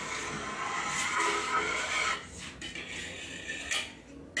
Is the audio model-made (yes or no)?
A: no